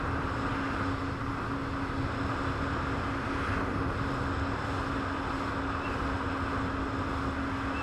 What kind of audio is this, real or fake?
real